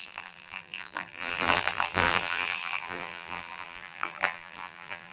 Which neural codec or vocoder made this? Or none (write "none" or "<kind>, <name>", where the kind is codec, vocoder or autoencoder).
vocoder, BigVGAN v2